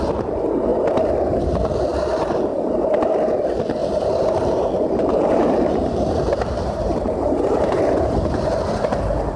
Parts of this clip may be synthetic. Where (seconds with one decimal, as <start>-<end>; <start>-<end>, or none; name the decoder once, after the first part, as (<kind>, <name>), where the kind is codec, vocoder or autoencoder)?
1.9-3.0 (vocoder, BigVGAN v2); 3.8-7.8